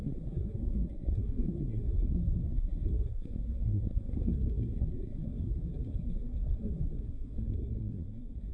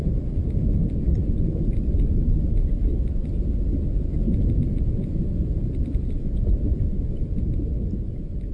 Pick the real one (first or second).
second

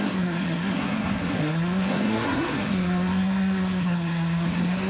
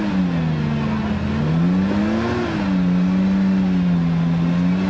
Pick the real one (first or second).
second